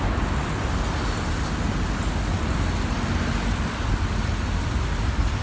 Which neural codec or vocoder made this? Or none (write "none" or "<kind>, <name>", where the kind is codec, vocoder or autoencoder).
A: none